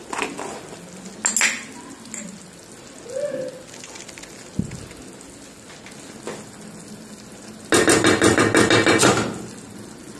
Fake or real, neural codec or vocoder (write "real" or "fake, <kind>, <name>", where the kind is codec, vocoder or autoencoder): real